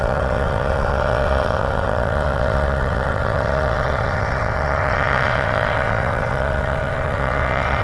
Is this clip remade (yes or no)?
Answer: yes